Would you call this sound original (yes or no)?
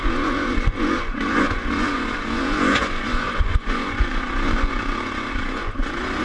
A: no